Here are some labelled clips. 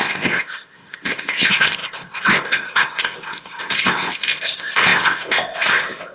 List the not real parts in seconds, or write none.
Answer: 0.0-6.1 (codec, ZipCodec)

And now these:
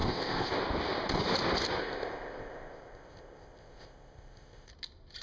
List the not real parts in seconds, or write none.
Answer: 0.0-0.5 (codec, ZipCodec); 1.8-4.7

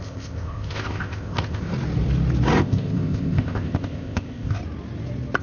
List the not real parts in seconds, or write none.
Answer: 0.0-1.7 (codec, ZipCodec); 2.6-4.6

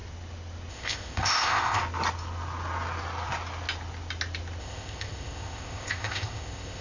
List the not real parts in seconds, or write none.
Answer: 0.7-1.8 (codec, ZipCodec); 4.6-6.8